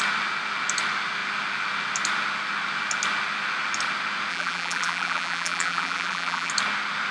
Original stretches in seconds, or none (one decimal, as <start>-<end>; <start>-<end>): 0.0-4.3; 6.5-7.1